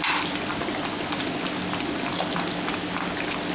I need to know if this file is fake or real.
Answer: real